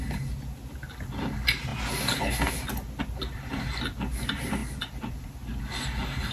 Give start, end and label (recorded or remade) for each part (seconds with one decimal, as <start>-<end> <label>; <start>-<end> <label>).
0.0-6.3 recorded